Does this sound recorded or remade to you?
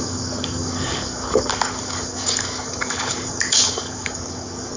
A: remade